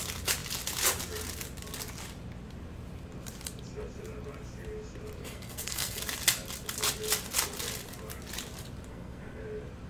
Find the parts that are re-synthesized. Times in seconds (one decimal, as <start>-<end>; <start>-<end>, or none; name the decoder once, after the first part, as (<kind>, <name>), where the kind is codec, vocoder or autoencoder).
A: 5.2-6.0 (codec, SNAC); 8.9-9.4